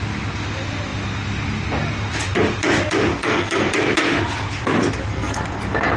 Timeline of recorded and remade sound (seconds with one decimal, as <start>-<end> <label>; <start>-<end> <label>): 0.0-3.1 recorded; 3.1-3.7 remade; 3.7-5.1 recorded; 5.1-5.6 remade; 5.6-6.0 recorded